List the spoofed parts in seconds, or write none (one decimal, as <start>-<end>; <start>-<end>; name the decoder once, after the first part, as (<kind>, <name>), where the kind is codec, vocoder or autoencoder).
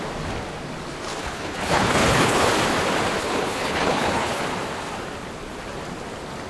1.2-2.5 (codec, HILCodec); 3.2-4.4